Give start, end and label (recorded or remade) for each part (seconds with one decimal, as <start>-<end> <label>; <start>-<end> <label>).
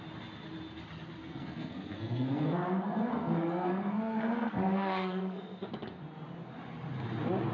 0.0-1.2 recorded; 1.2-5.7 remade; 5.7-7.5 recorded